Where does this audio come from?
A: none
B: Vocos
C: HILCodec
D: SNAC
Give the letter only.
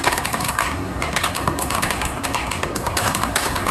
D